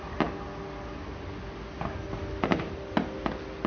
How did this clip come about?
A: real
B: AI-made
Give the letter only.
A